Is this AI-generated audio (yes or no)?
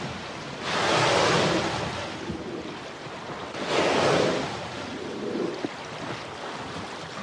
no